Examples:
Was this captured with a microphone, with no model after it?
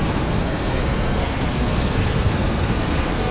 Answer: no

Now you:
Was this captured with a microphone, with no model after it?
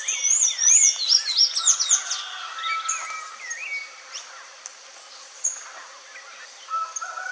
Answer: yes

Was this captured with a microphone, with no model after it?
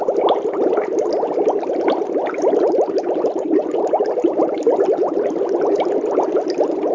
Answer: yes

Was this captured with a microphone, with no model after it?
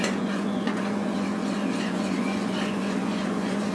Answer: no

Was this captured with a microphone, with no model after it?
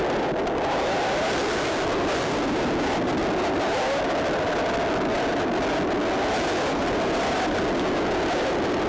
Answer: yes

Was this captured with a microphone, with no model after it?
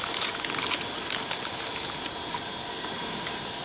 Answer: yes